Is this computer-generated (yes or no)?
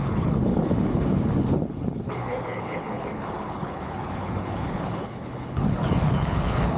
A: yes